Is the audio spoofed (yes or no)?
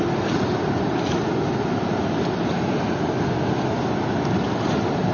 no